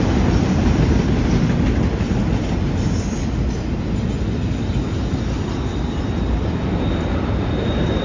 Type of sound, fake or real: real